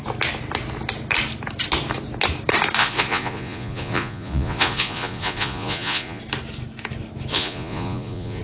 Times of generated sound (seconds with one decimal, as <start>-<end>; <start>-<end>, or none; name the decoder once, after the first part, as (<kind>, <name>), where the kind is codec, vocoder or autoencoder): 2.8-6.2 (vocoder, Vocos); 7.3-8.4